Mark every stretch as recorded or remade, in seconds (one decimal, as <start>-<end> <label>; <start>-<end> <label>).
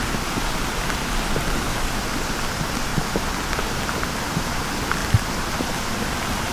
0.0-6.5 recorded